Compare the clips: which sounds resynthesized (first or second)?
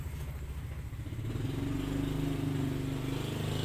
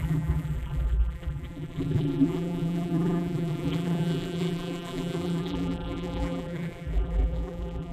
second